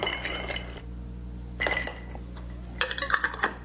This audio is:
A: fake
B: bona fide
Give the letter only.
B